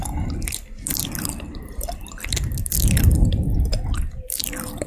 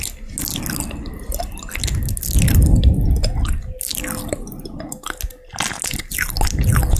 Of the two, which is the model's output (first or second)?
first